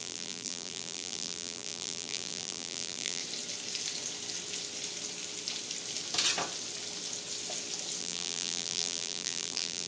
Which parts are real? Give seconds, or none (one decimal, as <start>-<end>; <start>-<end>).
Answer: 3.2-8.0